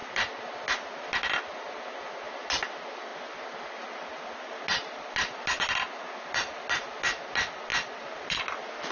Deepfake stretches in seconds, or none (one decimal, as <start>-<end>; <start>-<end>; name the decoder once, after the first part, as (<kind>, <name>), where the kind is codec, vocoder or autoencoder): none